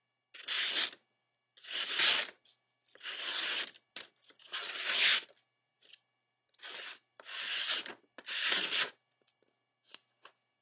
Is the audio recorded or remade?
recorded